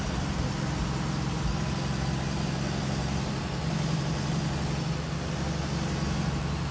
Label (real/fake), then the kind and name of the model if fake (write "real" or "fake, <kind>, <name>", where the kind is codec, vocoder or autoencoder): real